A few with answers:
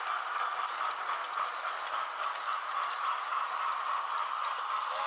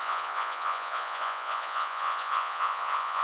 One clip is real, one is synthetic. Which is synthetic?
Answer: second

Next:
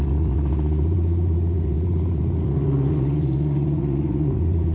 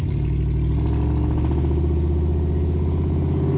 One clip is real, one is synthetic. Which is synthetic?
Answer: first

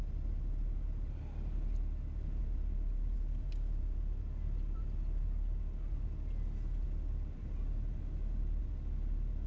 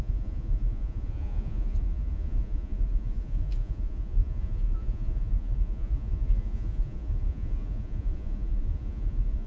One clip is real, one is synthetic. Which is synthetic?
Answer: second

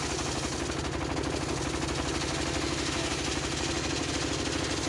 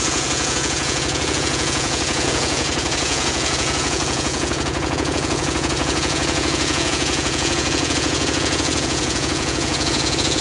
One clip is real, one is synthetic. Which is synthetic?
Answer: second